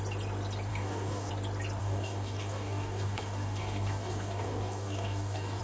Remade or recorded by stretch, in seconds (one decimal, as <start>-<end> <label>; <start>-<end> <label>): 0.0-0.7 recorded; 0.7-1.3 remade; 1.3-1.8 recorded; 1.8-5.6 remade